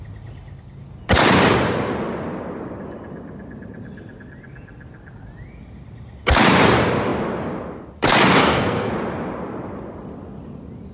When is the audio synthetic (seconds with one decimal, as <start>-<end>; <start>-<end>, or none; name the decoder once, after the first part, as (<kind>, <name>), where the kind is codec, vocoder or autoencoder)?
8.4-8.9 (codec, SNAC)